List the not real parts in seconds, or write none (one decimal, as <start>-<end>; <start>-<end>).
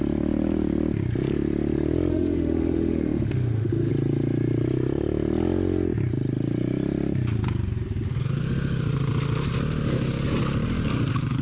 2.1-3.9